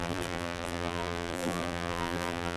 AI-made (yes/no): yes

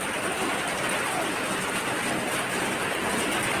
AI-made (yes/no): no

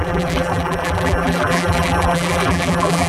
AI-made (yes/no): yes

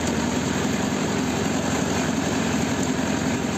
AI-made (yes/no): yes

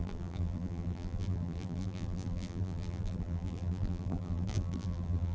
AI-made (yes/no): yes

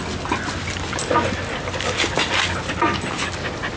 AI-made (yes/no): no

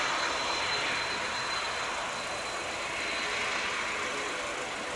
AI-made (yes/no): no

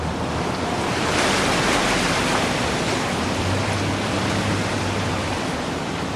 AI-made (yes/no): yes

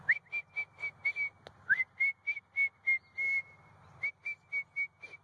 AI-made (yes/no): no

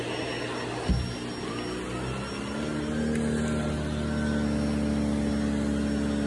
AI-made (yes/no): no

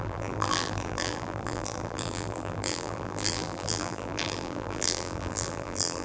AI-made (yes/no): yes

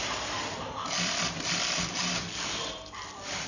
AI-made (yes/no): yes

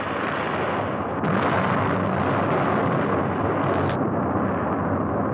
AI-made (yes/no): no